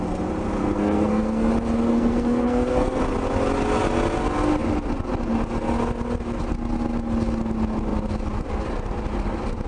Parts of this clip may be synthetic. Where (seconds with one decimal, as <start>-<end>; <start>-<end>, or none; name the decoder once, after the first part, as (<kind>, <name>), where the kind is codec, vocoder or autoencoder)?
0.6-1.5 (codec, SNAC); 1.9-3.0